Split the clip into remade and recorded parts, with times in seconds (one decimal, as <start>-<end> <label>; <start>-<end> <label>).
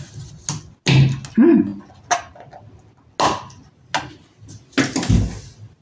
0.0-5.8 recorded